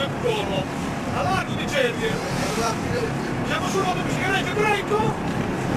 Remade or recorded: remade